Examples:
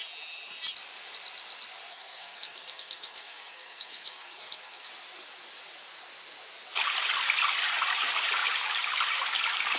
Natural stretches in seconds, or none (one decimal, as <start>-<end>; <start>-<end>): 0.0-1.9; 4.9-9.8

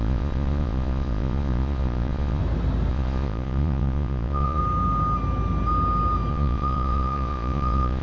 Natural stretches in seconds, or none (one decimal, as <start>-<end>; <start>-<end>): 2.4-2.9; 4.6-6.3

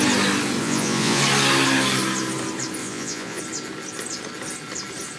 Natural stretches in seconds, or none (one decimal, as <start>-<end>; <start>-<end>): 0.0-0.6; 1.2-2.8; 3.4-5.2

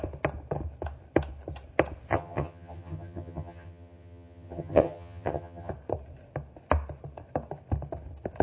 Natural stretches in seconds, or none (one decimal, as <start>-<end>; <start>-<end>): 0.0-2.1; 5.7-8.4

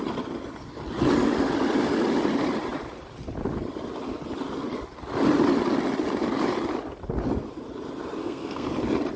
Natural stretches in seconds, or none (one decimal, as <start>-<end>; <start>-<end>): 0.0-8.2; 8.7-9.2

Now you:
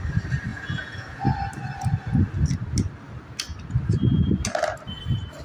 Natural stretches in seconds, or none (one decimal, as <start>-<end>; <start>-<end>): 0.0-0.5; 1.2-5.4